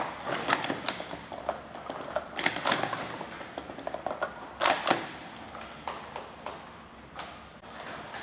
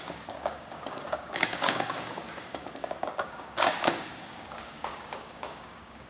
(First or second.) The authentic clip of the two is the first